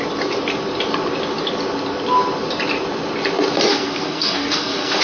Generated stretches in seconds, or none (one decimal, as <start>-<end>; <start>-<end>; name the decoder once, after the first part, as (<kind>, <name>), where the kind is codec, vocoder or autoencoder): 3.7-5.0 (codec, SNAC)